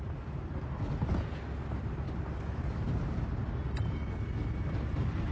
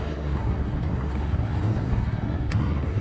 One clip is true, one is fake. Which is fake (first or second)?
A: second